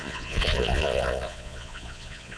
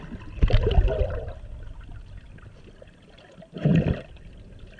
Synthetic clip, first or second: first